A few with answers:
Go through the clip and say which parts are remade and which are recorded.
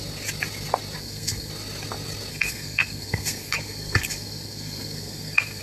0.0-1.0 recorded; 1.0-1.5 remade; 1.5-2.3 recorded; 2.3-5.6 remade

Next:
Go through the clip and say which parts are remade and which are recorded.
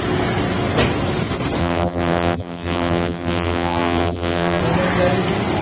0.0-1.6 recorded; 1.6-4.6 remade; 4.6-5.6 recorded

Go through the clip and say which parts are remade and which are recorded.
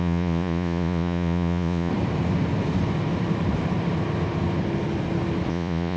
0.0-1.9 remade; 1.9-5.5 recorded; 5.5-6.0 remade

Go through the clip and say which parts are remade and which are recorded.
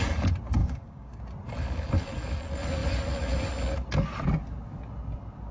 0.0-0.6 recorded; 0.6-1.2 remade; 1.2-5.5 recorded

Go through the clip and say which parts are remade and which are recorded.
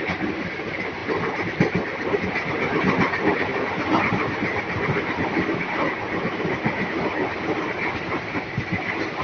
0.0-9.2 recorded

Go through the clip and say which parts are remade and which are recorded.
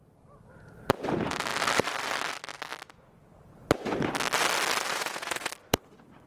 0.0-4.9 recorded; 4.9-5.5 remade; 5.5-6.3 recorded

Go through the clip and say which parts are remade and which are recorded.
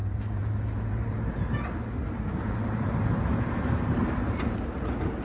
0.0-1.3 remade; 1.3-2.0 recorded; 2.0-5.2 remade